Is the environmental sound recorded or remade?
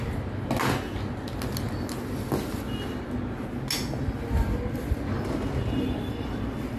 recorded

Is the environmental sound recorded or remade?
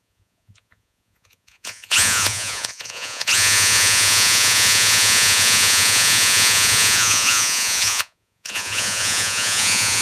remade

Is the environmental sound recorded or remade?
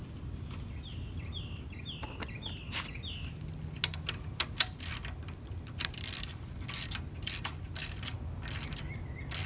recorded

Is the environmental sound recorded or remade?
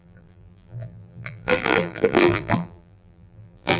remade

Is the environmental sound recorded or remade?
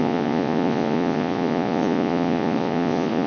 remade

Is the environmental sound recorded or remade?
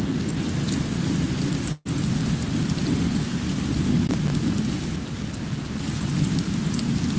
recorded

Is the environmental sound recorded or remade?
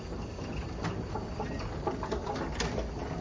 recorded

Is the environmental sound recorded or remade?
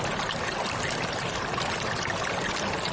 recorded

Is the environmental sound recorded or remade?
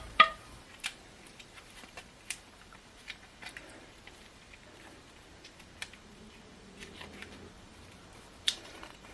remade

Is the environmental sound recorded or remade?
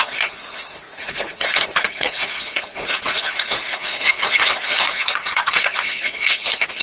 remade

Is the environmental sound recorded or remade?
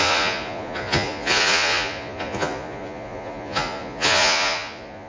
remade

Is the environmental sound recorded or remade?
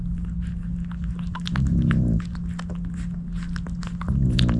recorded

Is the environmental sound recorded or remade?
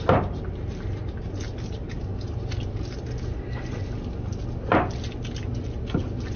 recorded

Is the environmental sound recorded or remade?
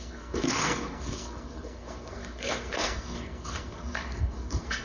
remade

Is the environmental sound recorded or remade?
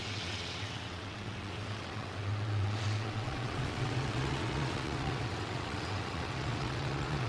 remade